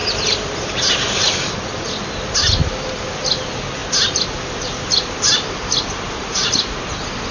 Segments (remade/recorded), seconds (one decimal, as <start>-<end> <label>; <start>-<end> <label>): 0.0-7.3 recorded